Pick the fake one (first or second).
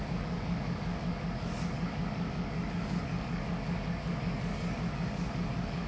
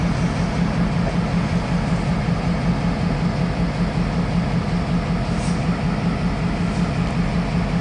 first